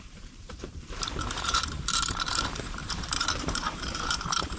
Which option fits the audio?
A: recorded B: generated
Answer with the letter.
B